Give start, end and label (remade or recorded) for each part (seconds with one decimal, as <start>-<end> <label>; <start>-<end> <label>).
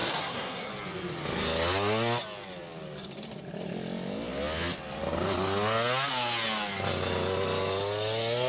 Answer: 0.0-0.7 remade; 0.7-8.5 recorded